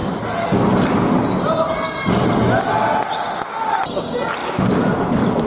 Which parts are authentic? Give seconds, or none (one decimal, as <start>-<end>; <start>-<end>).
0.0-5.5